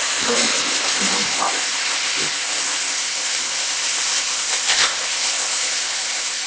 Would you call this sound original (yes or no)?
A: no